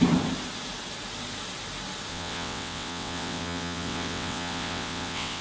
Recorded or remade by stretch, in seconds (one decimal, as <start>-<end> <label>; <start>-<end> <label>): 0.0-2.1 recorded; 2.1-5.4 remade